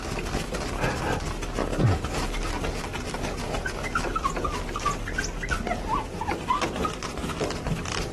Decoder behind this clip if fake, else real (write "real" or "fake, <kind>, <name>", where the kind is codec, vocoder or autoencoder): real